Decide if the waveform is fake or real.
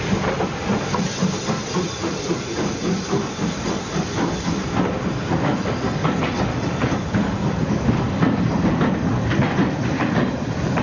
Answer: fake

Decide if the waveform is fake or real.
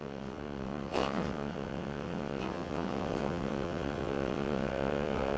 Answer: fake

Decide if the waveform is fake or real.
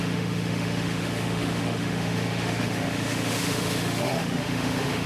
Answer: fake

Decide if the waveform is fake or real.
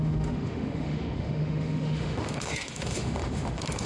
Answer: fake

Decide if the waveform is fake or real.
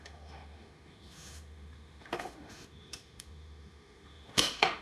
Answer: fake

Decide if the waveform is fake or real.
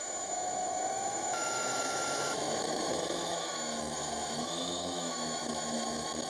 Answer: fake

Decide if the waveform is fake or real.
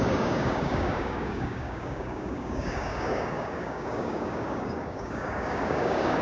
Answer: fake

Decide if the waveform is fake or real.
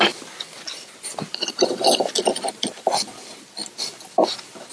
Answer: real